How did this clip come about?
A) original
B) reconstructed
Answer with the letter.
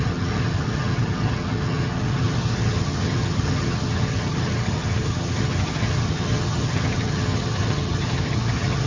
B